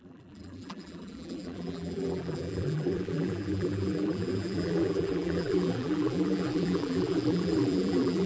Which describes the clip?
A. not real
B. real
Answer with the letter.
A